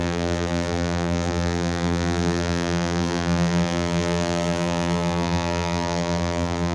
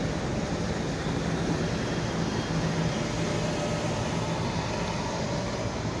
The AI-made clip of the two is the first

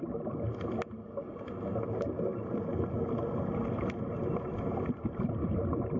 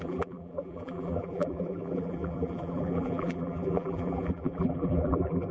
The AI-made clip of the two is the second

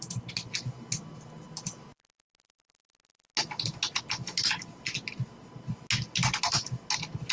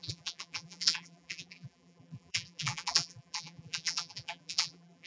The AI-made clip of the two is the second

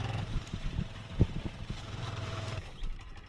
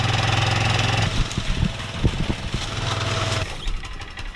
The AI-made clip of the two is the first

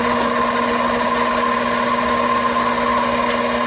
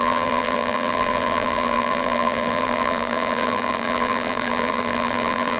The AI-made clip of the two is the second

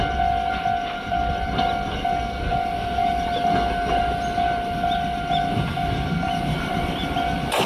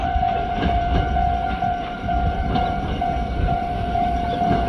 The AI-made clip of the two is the second